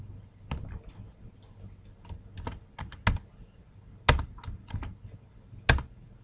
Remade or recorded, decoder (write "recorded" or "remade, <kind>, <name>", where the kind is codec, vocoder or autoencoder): recorded